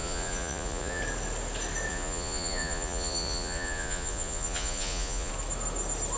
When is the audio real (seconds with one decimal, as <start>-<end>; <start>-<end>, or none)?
1.0-1.9; 5.3-6.2